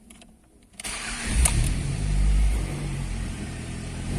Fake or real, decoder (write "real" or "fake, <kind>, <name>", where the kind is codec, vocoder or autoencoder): fake, vocoder, BigVGAN v2